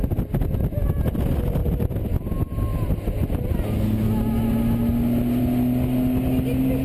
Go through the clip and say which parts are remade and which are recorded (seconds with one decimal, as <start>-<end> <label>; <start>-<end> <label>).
0.0-6.8 recorded